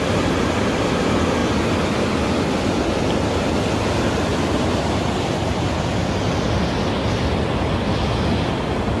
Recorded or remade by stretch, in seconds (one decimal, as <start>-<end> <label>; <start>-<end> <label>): 0.0-9.0 recorded

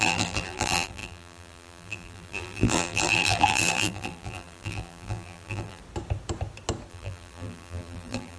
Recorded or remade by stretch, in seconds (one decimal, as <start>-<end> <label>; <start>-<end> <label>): 0.0-5.8 remade; 5.8-6.9 recorded; 6.9-8.4 remade

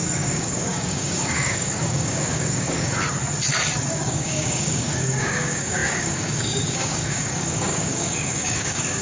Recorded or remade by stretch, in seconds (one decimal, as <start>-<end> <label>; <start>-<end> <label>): 0.0-2.9 remade; 2.9-3.8 recorded; 3.8-9.0 remade

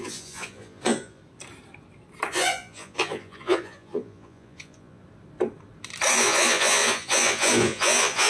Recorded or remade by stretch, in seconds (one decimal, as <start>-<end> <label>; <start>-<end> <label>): 0.0-1.2 remade; 1.2-2.3 recorded; 2.3-5.0 remade; 5.0-6.1 recorded; 6.1-8.3 remade